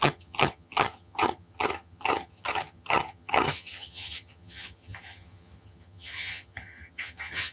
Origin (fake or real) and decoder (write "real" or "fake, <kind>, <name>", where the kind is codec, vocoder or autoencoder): fake, vocoder, HiFi-GAN